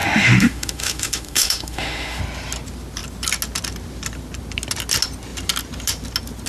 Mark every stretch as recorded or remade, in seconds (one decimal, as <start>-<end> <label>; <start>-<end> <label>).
0.0-2.2 remade; 2.2-6.5 recorded